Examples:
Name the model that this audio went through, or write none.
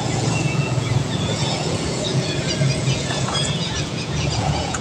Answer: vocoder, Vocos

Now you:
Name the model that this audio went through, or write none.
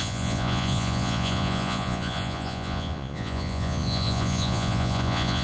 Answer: vocoder, Vocos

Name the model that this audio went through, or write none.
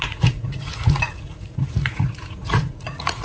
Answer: vocoder, Vocos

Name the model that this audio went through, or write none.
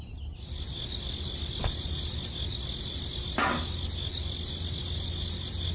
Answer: none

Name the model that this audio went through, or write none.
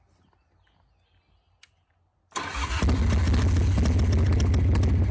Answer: none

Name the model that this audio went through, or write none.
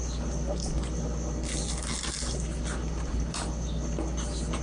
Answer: none